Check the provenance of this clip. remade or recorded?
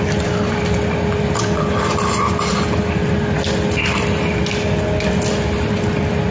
recorded